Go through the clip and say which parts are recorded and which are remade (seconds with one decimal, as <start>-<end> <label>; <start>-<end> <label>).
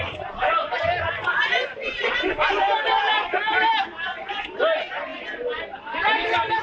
0.0-6.6 recorded